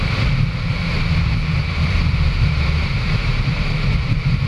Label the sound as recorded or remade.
remade